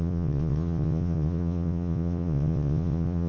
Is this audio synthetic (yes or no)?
yes